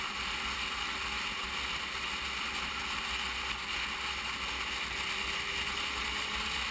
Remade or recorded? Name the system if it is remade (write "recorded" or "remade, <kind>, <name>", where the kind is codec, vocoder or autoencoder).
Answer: recorded